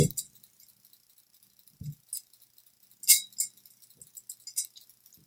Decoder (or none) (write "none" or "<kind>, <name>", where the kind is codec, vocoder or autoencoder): none